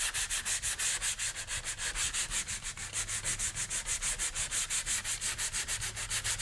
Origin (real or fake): real